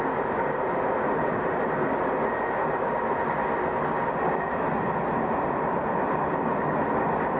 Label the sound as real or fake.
real